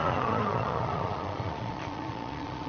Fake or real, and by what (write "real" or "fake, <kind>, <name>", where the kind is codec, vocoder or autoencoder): fake, vocoder, Vocos